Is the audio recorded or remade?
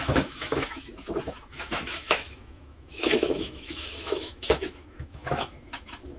remade